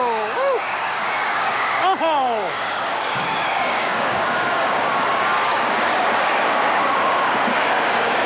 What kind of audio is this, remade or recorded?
remade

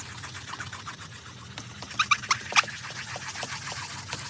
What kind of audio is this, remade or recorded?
recorded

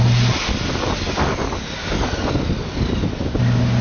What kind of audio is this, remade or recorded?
recorded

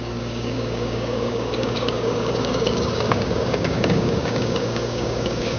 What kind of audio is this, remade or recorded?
remade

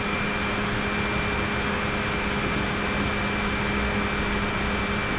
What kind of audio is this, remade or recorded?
recorded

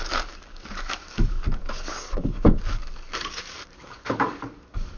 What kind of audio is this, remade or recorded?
remade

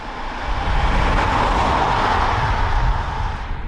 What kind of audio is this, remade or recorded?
recorded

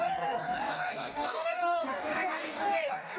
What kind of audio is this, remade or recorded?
remade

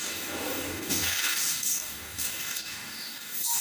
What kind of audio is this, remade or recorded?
remade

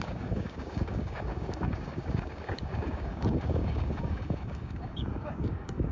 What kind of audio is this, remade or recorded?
remade